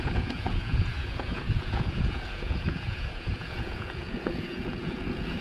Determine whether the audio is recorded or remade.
remade